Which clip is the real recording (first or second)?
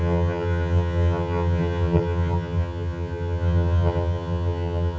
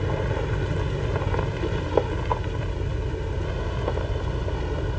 second